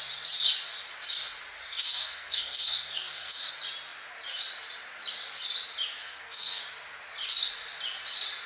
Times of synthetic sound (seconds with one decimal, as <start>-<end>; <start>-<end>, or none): 1.7-3.5; 6.0-6.6